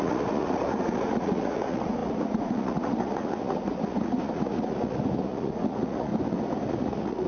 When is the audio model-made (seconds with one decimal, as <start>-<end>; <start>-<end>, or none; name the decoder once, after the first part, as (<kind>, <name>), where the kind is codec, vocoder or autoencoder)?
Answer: 0.0-6.1 (vocoder, Vocos); 6.7-7.3